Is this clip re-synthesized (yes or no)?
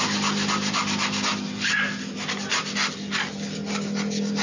no